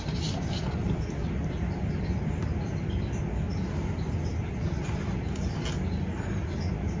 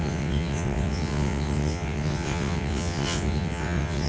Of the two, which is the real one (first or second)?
first